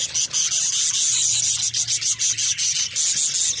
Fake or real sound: real